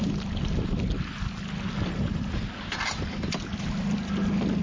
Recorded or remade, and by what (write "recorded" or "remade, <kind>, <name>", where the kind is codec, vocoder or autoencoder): recorded